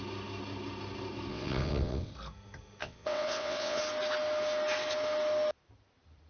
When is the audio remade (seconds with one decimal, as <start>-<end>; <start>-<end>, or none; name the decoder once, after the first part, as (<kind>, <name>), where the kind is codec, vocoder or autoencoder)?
1.3-2.1 (vocoder, WaveNeXt); 2.8-3.8